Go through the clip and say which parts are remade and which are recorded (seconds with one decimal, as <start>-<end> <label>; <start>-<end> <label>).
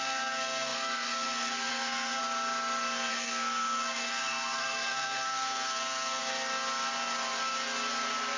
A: 0.0-2.2 remade; 2.2-3.1 recorded; 3.1-6.2 remade; 6.2-8.4 recorded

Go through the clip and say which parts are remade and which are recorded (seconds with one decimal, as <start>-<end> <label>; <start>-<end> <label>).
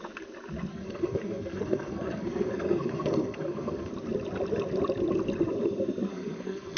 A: 0.0-0.7 recorded; 0.7-3.9 remade; 3.9-6.1 recorded; 6.1-6.8 remade